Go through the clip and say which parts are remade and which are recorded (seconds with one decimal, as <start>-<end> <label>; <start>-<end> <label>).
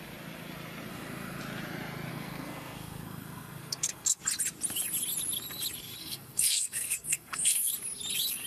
0.0-0.9 recorded; 0.9-1.4 remade; 1.4-2.1 recorded; 2.1-4.2 remade; 4.2-6.0 recorded; 6.0-7.7 remade; 7.7-8.5 recorded